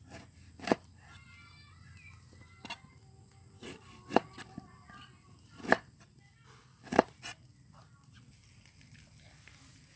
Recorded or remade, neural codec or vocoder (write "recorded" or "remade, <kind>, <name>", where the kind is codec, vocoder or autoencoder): recorded